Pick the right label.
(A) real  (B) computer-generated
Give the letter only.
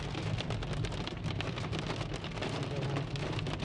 A